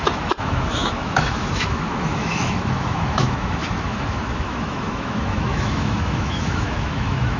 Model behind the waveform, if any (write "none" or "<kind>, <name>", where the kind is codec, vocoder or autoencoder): autoencoder, DAC-VAE